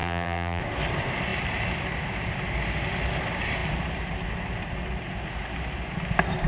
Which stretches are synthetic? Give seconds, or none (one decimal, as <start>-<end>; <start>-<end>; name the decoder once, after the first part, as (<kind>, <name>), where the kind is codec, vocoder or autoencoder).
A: 0.0-0.6 (vocoder, BigVGAN v2)